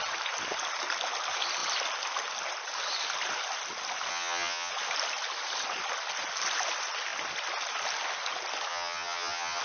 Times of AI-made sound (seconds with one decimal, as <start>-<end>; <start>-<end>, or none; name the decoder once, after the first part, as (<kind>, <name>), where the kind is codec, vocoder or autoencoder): 4.1-4.7 (vocoder, HiFi-GAN); 8.7-9.6